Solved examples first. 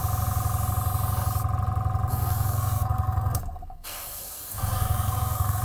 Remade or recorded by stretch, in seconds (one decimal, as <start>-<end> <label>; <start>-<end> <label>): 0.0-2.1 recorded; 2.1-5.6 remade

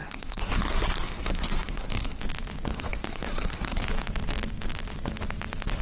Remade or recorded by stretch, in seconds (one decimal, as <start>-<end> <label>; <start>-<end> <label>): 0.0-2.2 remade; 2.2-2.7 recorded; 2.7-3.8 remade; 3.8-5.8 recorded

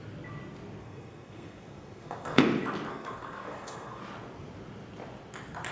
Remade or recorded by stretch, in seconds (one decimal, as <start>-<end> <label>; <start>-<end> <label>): 0.0-0.8 recorded; 0.8-2.4 remade; 2.4-2.9 recorded; 2.9-4.0 remade; 4.0-5.7 recorded

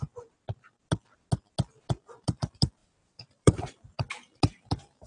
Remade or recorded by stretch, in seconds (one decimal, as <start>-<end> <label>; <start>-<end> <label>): 0.0-2.8 recorded; 2.8-3.7 remade; 3.7-5.1 recorded